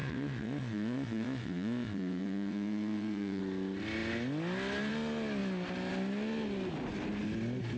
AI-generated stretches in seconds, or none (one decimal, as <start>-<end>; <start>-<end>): 0.0-3.4